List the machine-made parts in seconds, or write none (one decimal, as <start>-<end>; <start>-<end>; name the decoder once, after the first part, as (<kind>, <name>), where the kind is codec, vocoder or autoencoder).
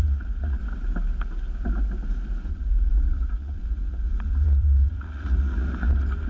0.0-0.6 (vocoder, Vocos); 2.5-6.3